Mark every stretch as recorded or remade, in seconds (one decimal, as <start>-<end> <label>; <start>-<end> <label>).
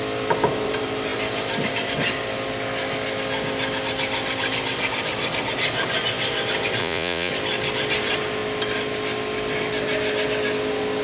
0.0-6.8 recorded; 6.8-7.3 remade; 7.3-11.0 recorded